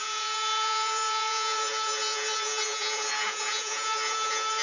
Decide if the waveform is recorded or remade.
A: remade